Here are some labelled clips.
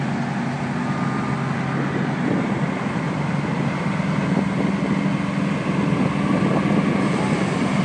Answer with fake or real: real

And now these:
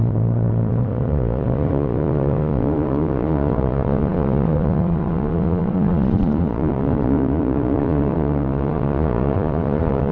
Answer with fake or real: fake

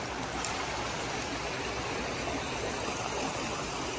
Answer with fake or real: real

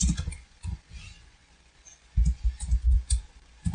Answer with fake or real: fake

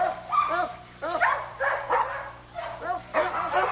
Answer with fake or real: real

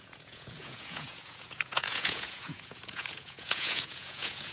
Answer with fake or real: fake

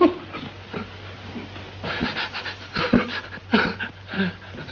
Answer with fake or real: real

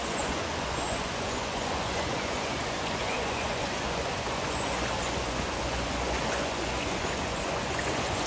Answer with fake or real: fake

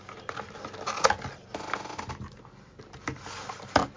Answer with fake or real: real